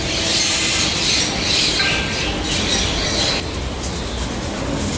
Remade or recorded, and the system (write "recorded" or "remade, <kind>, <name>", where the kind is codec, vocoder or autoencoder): recorded